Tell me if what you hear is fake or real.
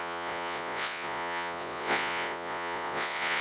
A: fake